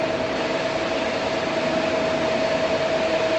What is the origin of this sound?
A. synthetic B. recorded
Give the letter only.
B